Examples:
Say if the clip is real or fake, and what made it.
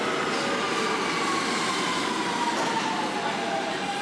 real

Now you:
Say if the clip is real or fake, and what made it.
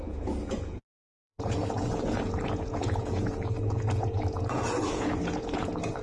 fake, vocoder, Vocos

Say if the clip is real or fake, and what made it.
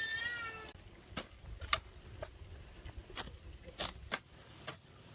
real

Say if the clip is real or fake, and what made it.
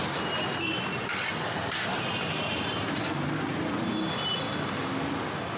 real